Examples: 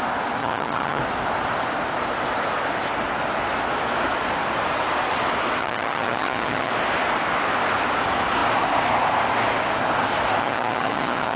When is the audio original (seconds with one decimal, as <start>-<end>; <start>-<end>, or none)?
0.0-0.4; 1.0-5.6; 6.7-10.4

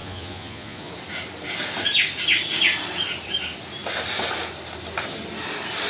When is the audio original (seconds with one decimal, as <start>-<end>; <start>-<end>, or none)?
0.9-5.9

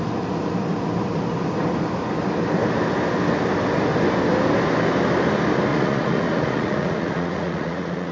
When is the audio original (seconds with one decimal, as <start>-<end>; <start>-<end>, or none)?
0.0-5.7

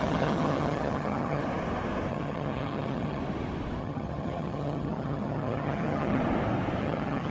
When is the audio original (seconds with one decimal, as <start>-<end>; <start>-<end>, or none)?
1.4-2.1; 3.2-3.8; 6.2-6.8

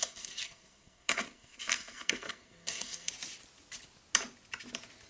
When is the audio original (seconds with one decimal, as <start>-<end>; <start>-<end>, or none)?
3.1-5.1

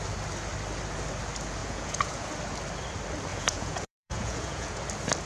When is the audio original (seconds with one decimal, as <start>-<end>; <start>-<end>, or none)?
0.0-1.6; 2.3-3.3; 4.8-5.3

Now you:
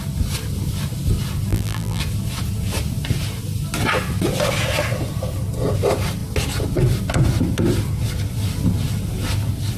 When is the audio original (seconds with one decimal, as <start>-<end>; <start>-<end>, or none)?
0.0-1.5; 2.0-9.8